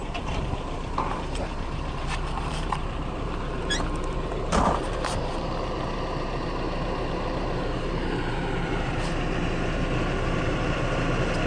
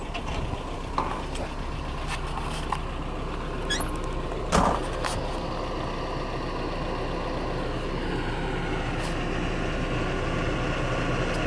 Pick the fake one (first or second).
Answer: first